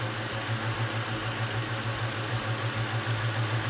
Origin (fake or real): real